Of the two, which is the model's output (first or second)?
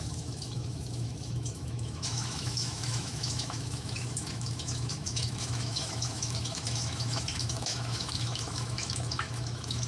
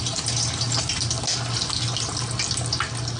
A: first